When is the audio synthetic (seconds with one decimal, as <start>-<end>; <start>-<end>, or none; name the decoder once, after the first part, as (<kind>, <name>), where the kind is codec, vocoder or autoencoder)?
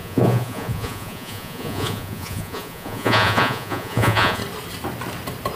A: 0.0-4.4 (vocoder, Vocos)